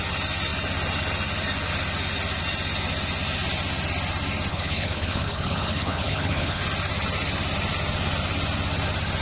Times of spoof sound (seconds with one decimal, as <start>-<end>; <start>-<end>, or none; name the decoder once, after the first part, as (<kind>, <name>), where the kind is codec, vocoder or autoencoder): 4.5-6.6 (codec, HILCodec)